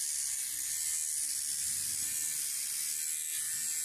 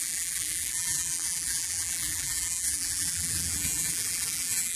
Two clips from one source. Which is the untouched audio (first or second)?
first